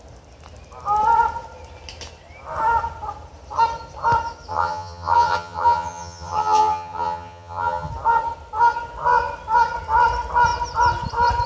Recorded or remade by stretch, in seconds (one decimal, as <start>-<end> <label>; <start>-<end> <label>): 0.0-4.5 recorded; 4.5-7.9 remade; 7.9-11.5 recorded